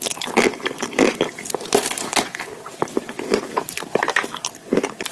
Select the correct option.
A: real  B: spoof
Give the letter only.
A